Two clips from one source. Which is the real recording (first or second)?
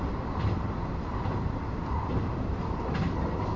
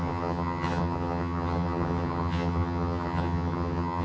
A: first